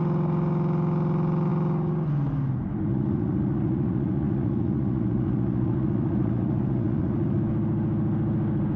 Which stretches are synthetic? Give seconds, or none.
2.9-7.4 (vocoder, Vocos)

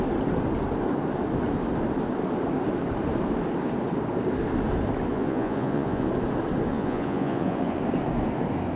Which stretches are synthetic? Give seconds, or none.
5.1-6.1 (vocoder, Vocos); 6.7-7.8